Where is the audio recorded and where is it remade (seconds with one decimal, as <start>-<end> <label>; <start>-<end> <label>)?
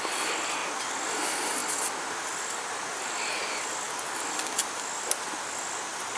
0.0-6.2 recorded